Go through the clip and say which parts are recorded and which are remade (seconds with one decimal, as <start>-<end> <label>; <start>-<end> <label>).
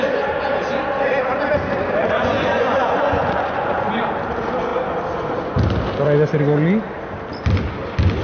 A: 0.0-2.0 recorded; 2.0-3.9 remade; 3.9-8.2 recorded